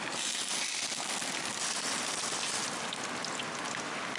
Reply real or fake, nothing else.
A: real